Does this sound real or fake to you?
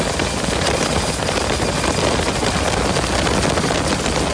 real